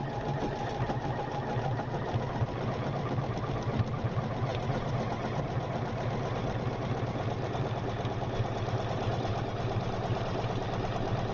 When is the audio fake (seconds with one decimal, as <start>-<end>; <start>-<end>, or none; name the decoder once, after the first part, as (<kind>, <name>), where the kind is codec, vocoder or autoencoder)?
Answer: none